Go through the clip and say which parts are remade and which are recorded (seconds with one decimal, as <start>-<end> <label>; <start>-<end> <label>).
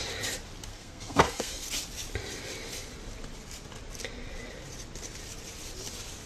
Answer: 0.0-0.7 recorded; 0.7-1.7 remade; 1.7-6.3 recorded